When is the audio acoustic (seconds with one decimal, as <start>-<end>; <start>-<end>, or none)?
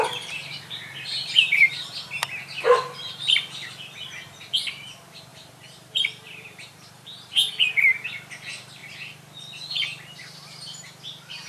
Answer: 0.0-0.4; 1.8-5.3; 7.5-11.5